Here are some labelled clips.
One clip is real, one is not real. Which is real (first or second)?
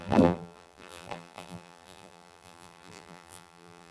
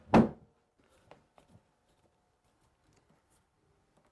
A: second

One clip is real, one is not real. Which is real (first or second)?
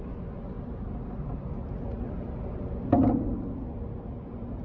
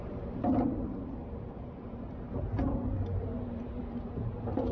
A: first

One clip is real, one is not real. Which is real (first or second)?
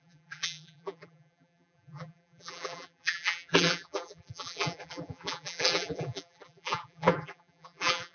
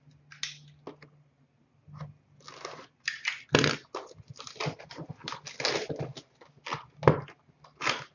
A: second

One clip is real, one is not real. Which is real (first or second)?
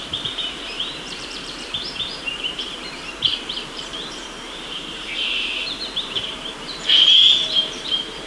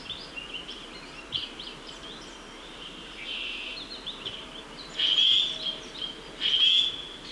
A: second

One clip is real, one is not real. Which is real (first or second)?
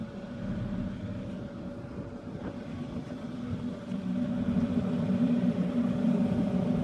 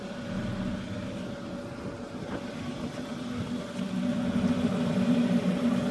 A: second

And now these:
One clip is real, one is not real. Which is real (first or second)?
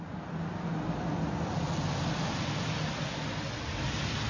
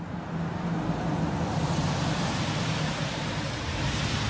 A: first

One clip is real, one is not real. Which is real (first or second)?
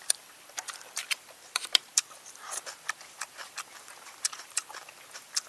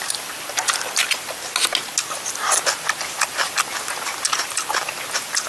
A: second